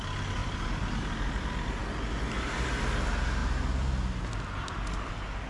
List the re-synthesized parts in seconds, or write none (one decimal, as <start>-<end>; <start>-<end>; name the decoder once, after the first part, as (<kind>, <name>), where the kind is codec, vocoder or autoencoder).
0.4-1.1 (vocoder, BigVGAN v2)